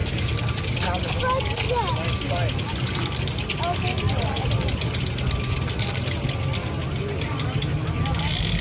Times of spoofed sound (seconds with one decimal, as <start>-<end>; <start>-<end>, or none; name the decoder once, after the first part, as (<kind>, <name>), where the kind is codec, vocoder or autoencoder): none